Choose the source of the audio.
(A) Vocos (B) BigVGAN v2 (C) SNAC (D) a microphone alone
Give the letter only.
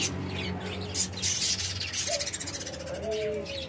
D